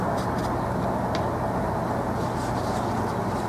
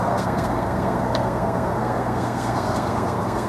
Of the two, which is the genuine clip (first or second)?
first